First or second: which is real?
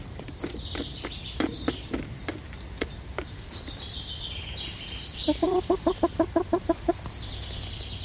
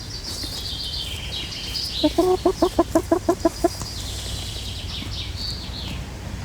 second